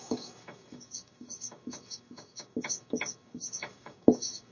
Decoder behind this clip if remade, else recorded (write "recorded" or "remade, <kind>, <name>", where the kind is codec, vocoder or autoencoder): remade, autoencoder, DAC-VAE